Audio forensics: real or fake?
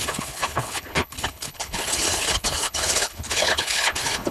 fake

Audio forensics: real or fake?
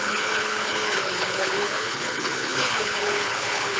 fake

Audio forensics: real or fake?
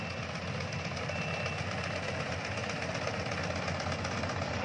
real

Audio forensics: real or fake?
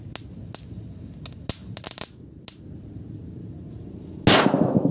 real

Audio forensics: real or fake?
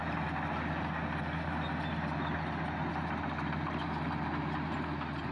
real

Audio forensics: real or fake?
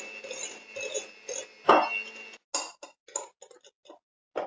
real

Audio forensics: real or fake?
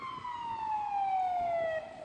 real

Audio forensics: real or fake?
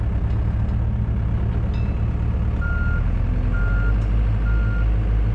real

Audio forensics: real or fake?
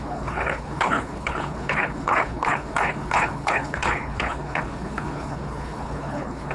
fake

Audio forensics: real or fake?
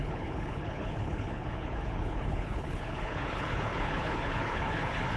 fake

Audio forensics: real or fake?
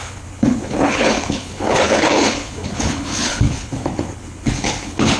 fake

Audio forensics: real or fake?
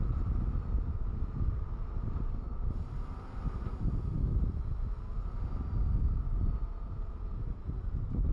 real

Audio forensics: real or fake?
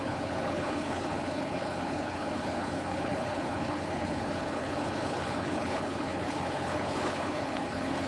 fake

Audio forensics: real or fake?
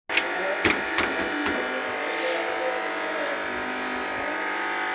real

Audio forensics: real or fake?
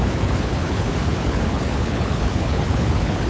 fake